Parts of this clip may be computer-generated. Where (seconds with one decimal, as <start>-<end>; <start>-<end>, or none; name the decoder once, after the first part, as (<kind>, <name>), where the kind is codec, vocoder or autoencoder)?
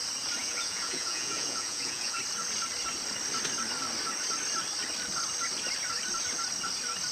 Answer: 0.4-2.2 (vocoder, Vocos)